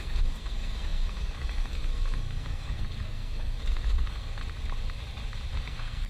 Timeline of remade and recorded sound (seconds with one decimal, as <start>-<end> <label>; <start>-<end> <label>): 0.0-4.4 remade; 4.4-5.5 recorded; 5.5-6.1 remade

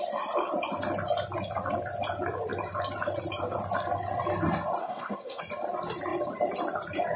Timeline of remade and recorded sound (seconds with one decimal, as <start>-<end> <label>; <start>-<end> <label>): 0.0-4.8 recorded; 4.8-5.4 remade; 5.4-7.2 recorded

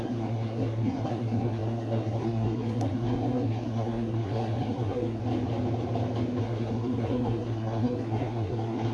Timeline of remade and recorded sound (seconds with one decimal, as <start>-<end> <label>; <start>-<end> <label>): 0.0-5.2 remade; 5.2-6.4 recorded; 6.4-8.9 remade